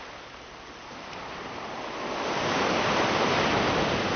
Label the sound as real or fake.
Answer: real